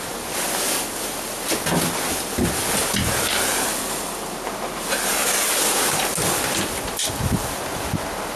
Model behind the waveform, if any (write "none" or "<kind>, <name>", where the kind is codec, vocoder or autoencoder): none